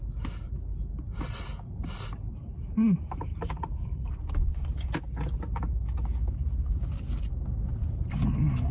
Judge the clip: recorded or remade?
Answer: recorded